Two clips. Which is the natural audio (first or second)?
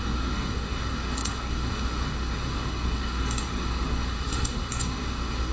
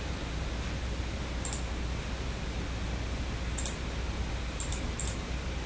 second